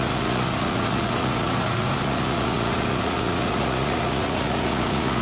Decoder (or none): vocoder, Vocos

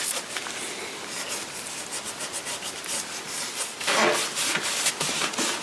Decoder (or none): none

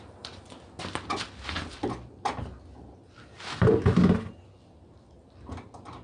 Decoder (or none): none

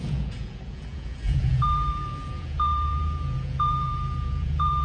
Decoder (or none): vocoder, Vocos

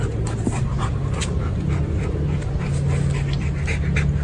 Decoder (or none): none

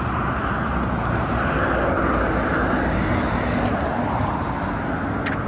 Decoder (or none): none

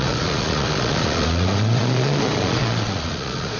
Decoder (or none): vocoder, Vocos